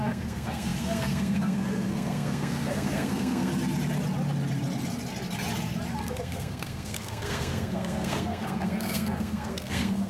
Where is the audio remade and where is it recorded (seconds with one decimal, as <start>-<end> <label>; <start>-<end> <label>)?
0.0-3.5 remade; 3.5-6.0 recorded; 6.0-10.1 remade